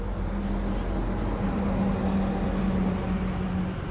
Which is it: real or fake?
real